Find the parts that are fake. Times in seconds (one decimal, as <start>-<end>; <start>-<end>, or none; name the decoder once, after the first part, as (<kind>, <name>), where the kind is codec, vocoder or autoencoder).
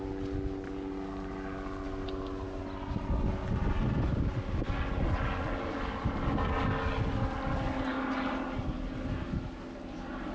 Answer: none